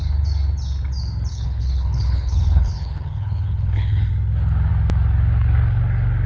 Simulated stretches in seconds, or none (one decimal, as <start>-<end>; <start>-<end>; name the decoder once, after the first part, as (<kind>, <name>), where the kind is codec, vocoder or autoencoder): 1.3-4.1 (codec, HILCodec)